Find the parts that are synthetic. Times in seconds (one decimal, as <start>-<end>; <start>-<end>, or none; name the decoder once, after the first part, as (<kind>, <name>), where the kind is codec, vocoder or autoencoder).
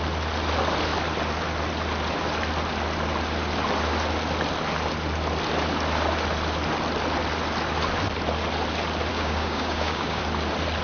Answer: 9.1-10.2 (codec, DAC)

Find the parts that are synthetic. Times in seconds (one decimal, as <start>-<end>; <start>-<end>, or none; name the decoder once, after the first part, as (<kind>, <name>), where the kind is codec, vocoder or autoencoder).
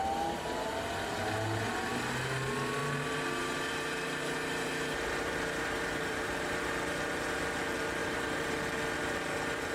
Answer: 2.8-6.6 (vocoder, BigVGAN v2); 8.0-8.6